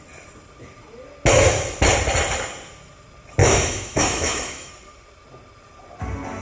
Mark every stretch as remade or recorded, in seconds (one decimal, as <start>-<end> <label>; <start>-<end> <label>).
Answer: 0.0-3.4 recorded; 3.4-4.7 remade; 4.7-6.4 recorded